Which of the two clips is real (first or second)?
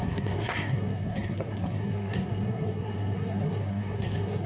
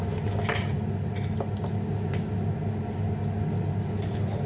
second